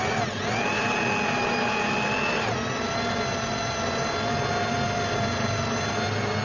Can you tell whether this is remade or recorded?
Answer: recorded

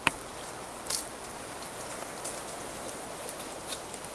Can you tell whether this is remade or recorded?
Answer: recorded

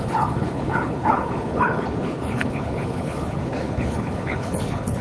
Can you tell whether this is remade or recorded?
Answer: remade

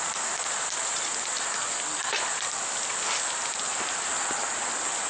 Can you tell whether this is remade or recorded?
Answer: recorded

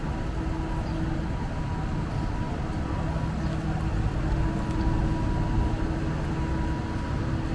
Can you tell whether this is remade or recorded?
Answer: recorded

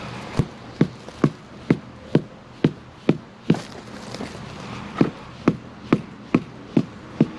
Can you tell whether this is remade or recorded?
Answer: recorded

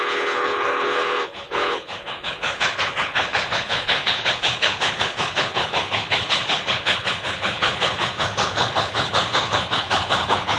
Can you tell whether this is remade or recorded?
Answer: remade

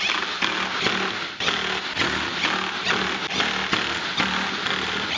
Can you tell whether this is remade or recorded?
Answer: recorded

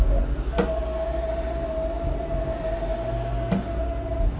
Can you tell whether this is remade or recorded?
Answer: recorded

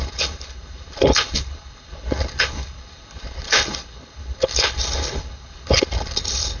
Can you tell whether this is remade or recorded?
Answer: remade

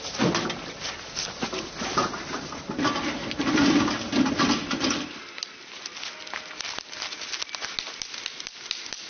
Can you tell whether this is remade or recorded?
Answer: recorded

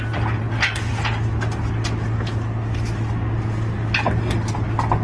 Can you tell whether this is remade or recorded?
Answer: recorded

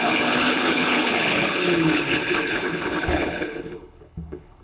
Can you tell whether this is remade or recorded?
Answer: remade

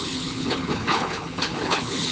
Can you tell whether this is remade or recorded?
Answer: remade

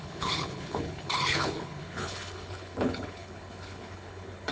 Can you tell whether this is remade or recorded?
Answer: remade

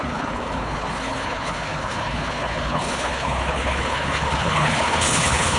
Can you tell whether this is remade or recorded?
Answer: remade